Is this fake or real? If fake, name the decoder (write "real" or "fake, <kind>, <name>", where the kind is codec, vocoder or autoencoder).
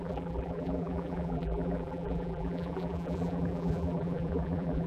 fake, vocoder, BigVGAN v2